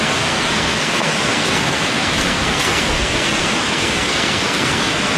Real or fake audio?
fake